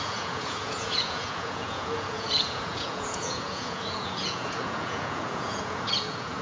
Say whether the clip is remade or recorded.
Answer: remade